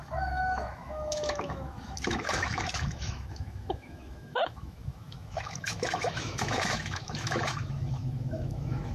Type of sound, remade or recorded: remade